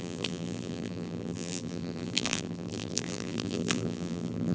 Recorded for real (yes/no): no